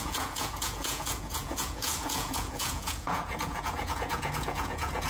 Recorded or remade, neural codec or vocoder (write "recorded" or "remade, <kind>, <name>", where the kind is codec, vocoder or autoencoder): remade, vocoder, Vocos